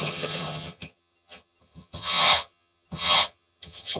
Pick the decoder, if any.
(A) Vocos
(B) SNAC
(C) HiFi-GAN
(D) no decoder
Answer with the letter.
C